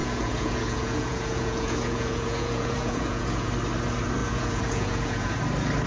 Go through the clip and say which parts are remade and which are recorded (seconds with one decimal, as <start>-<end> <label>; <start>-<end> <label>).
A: 0.0-3.5 remade; 3.5-4.2 recorded; 4.2-5.3 remade; 5.3-5.9 recorded